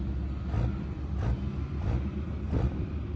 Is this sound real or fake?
real